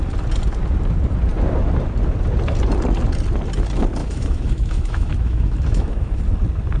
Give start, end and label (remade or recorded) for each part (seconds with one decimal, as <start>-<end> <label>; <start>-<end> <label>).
0.0-4.0 recorded; 4.0-6.2 remade; 6.2-6.8 recorded